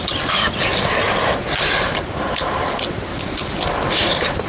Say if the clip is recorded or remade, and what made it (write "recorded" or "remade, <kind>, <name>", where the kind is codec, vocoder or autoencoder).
recorded